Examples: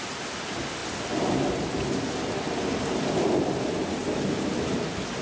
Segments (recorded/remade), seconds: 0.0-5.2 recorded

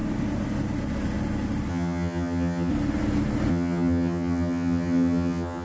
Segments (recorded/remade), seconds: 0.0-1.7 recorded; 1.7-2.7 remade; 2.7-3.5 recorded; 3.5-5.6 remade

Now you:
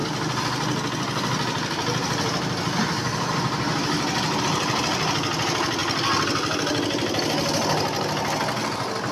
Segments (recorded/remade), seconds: 0.0-9.1 recorded

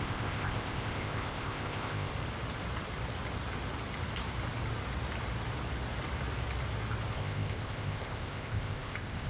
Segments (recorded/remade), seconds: 0.0-2.1 remade; 2.1-7.1 recorded; 7.1-9.3 remade